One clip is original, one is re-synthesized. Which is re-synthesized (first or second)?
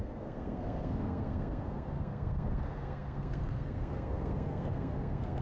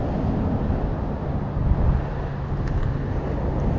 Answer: first